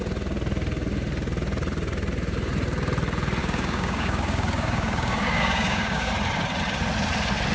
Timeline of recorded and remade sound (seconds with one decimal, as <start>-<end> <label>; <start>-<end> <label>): 0.0-3.4 recorded; 3.4-6.1 remade; 6.1-7.5 recorded